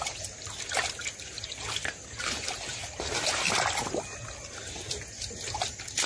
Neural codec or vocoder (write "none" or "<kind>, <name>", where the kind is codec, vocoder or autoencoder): none